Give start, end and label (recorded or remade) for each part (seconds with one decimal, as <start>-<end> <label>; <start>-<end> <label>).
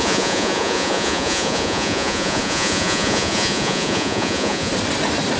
0.0-4.7 remade; 4.7-5.4 recorded